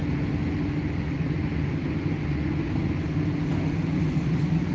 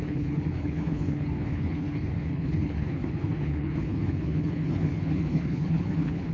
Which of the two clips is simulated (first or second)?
second